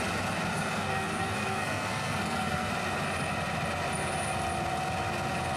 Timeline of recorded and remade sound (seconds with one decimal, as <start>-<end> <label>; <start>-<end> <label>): 0.0-0.5 recorded; 0.5-2.7 remade; 2.7-5.6 recorded